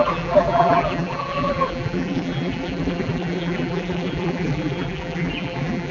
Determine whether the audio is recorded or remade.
remade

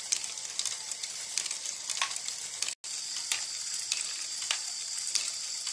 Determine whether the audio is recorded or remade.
recorded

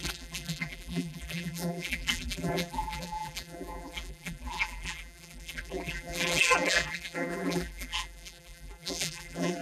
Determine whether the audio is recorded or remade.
remade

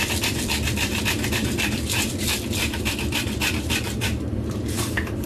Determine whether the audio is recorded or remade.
remade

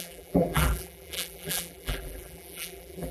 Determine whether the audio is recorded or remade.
remade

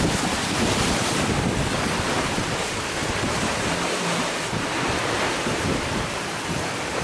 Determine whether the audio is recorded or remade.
recorded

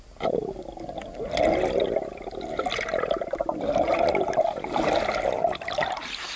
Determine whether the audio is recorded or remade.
recorded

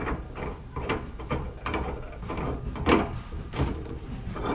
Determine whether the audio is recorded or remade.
remade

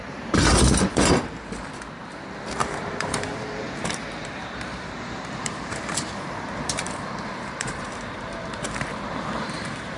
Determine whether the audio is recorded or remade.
remade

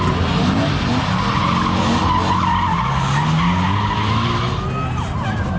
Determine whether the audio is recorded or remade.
recorded